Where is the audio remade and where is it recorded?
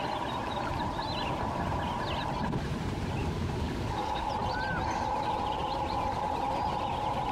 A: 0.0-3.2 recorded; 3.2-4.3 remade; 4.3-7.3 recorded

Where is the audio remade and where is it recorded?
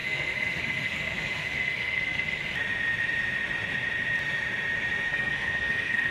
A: 0.0-2.4 remade; 2.4-5.1 recorded; 5.1-6.1 remade